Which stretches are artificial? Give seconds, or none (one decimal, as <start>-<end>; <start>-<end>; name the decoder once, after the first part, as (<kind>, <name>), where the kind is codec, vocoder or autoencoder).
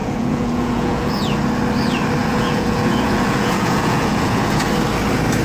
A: 0.0-1.4 (vocoder, Vocos); 2.2-4.7